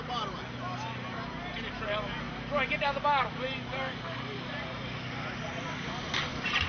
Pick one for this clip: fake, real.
real